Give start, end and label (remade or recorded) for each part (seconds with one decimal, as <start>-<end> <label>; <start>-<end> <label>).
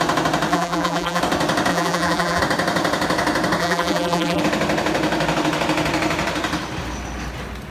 0.0-0.5 recorded; 0.5-1.2 remade; 1.2-1.7 recorded; 1.7-2.4 remade; 2.4-3.6 recorded; 3.6-4.4 remade; 4.4-7.7 recorded